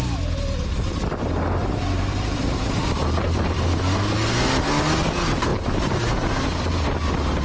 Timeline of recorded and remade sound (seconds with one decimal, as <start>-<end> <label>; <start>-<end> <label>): 0.0-1.6 recorded; 1.6-3.8 remade; 3.8-5.5 recorded; 5.5-6.1 remade; 6.1-7.4 recorded